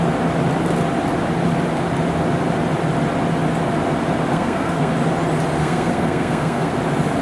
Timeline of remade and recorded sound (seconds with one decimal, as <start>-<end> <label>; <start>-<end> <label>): 0.0-4.3 recorded; 4.3-4.9 remade; 4.9-5.6 recorded; 5.6-6.8 remade; 6.8-7.2 recorded